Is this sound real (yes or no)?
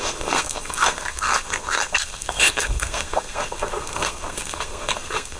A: no